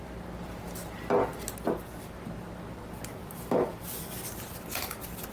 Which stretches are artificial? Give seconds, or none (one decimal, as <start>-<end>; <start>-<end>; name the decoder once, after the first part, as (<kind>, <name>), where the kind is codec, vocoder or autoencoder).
3.2-5.3 (vocoder, BigVGAN v2)